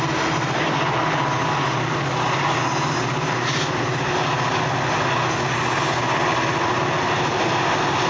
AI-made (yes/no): no